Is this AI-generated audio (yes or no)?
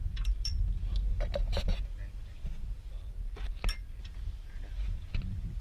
no